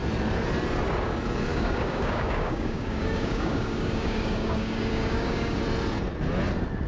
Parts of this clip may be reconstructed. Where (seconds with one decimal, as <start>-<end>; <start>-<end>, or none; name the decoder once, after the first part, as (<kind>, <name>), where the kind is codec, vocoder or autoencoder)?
1.5-5.6 (codec, DAC)